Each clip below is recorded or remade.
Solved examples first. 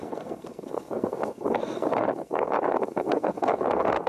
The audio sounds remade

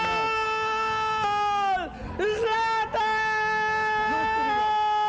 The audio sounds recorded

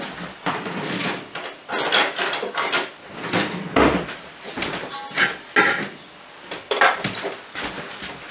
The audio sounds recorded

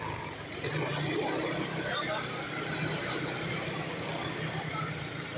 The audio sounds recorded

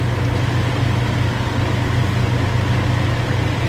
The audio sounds recorded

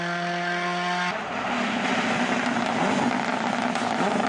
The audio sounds recorded